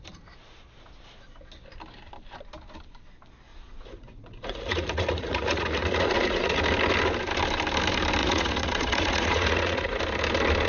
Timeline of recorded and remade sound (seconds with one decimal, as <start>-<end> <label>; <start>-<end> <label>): 0.0-3.5 recorded; 3.5-6.6 remade; 6.6-8.2 recorded; 8.2-10.0 remade; 10.0-10.7 recorded